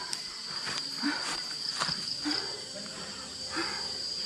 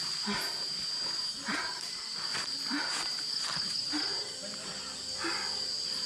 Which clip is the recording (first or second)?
second